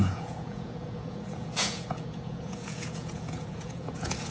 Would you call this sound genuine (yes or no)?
no